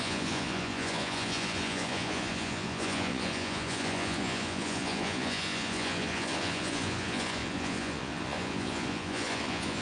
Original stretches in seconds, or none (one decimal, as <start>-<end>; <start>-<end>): none